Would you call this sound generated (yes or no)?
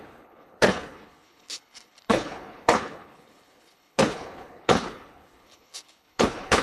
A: yes